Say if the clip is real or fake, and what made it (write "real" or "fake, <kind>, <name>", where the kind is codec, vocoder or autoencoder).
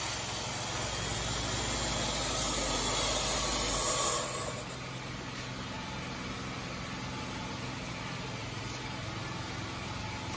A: real